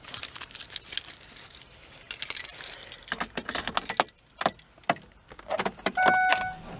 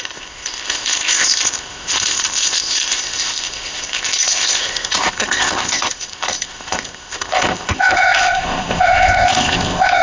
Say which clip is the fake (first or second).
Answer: second